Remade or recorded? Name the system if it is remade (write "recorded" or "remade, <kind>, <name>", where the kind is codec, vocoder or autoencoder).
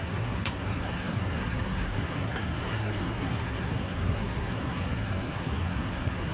remade, codec, SNAC